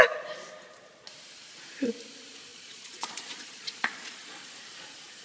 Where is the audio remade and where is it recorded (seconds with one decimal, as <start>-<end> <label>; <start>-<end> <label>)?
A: 0.0-2.5 recorded; 2.5-4.4 remade; 4.4-5.2 recorded